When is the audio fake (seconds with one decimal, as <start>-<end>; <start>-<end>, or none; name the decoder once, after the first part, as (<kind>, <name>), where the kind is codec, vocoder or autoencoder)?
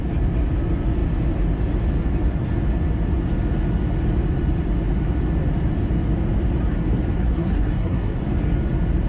7.2-8.2 (codec, SNAC)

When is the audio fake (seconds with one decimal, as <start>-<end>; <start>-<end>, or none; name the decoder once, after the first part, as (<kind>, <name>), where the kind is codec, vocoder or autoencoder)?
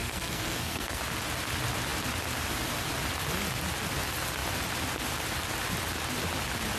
0.0-1.0 (codec, SNAC)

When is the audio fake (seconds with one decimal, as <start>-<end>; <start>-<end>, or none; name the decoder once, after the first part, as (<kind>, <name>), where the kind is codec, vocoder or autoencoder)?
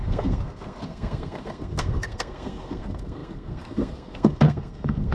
0.0-5.1 (codec, SNAC)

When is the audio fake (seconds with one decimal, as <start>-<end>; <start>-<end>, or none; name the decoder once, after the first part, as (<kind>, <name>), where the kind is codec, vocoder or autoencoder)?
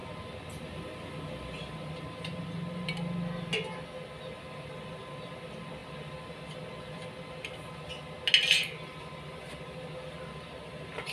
none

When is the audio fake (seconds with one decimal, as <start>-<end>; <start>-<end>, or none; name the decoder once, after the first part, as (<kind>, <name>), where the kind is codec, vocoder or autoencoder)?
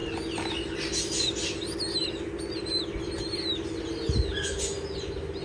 none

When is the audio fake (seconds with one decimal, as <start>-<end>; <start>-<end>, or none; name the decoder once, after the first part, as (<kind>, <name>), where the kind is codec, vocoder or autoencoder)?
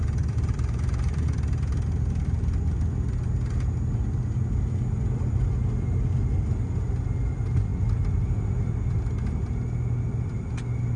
none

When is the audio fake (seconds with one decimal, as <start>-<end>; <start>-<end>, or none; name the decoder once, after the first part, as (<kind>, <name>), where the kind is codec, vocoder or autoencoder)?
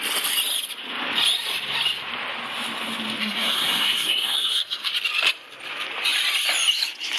3.2-4.9 (codec, SNAC)